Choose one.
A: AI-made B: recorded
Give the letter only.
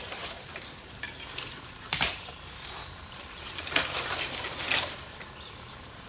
A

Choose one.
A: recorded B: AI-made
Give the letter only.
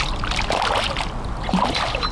A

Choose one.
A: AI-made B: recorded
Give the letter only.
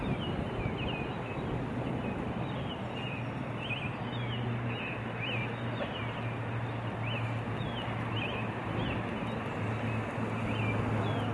B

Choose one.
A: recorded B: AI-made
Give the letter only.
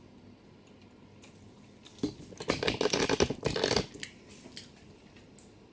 A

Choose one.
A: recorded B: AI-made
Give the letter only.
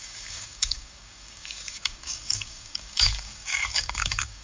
B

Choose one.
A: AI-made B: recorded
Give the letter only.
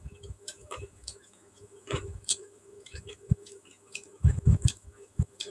A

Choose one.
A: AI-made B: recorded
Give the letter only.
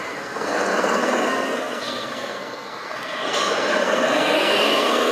A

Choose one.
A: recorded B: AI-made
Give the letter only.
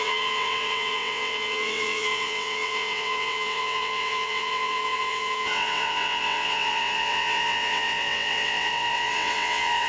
B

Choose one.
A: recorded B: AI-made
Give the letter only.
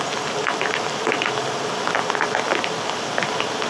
A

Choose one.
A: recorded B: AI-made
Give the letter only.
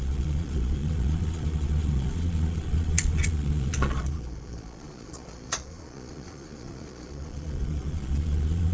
B